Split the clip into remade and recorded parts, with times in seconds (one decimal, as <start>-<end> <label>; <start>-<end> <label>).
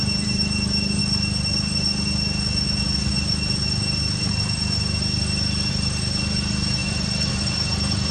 0.0-1.0 remade; 1.0-5.7 recorded; 5.7-8.1 remade